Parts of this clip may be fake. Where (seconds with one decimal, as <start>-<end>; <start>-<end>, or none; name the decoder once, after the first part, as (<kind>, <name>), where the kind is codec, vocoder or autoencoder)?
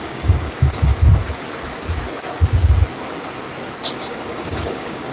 0.0-0.9 (codec, DAC); 3.9-5.1